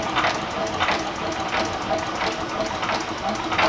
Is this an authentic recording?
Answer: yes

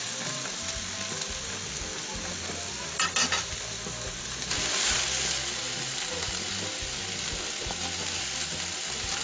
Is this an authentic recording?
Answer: yes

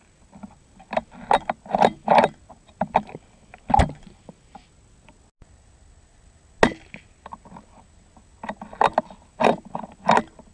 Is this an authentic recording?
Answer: yes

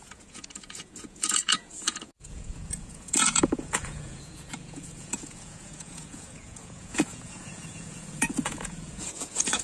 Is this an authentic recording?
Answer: no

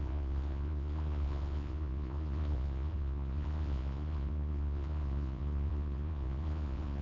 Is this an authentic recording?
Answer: no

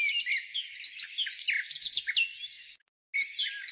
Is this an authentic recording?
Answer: yes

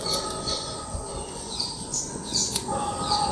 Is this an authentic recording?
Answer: no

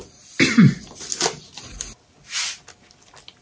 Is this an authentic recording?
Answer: yes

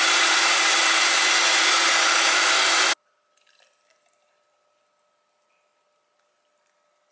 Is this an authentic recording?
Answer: yes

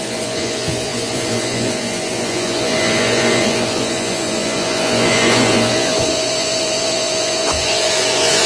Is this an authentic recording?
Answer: no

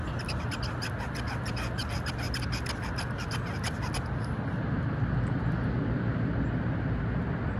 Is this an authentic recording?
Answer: yes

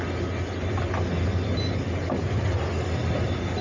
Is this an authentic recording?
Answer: yes